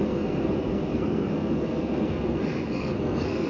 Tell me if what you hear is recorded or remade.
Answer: remade